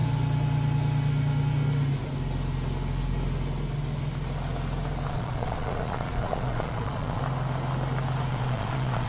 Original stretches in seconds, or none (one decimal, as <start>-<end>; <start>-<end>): 0.0-5.1; 7.2-8.3